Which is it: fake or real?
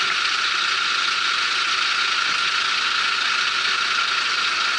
real